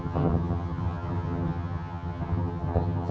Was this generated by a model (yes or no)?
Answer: yes